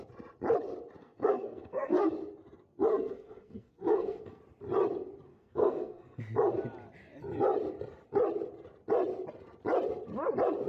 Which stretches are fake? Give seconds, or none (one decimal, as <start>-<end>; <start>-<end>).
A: 1.0-2.1; 2.9-4.4; 5.3-6.2